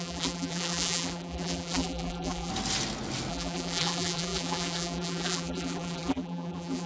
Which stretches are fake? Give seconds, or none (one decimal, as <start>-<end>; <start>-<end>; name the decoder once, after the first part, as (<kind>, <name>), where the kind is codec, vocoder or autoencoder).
0.0-2.5 (vocoder, BigVGAN v2); 3.3-6.9